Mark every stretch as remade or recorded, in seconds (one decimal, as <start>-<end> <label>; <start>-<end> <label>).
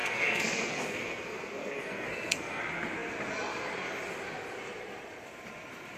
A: 0.0-2.6 remade; 2.6-6.0 recorded